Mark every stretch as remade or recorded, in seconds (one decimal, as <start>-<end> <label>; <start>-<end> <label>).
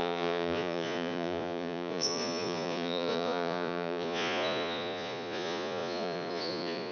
0.0-6.9 remade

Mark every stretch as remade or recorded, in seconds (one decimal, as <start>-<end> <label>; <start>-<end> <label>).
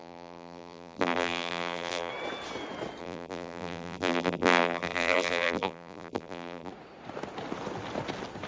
0.0-2.1 remade; 2.1-3.0 recorded; 3.0-6.7 remade; 6.7-8.5 recorded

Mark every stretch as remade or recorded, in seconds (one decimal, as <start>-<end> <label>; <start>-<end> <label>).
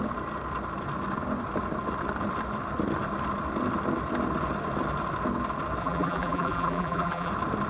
0.0-5.8 recorded; 5.8-7.3 remade; 7.3-7.7 recorded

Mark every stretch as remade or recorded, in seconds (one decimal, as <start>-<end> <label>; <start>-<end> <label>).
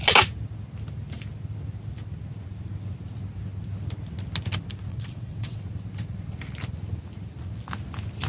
0.0-4.9 recorded; 4.9-5.6 remade; 5.6-8.3 recorded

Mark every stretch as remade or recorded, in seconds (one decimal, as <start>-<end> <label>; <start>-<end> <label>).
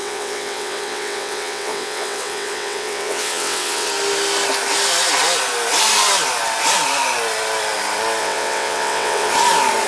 0.0-3.9 remade; 3.9-8.2 recorded; 8.2-9.3 remade; 9.3-9.9 recorded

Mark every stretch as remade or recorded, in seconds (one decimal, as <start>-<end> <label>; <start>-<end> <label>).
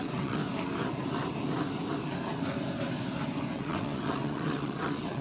0.0-0.4 remade; 0.4-3.5 recorded; 3.5-5.2 remade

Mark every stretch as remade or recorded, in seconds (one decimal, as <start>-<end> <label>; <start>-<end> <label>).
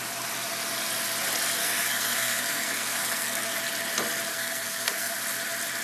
0.0-1.6 recorded; 1.6-3.6 remade; 3.6-4.3 recorded; 4.3-5.2 remade; 5.2-5.8 recorded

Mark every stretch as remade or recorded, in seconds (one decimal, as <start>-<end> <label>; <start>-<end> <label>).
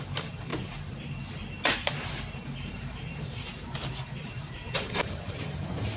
0.0-0.5 remade; 0.5-2.5 recorded; 2.5-3.5 remade; 3.5-4.2 recorded; 4.2-6.0 remade